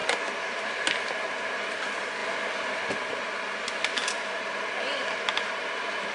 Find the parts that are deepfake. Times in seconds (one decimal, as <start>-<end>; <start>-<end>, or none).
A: none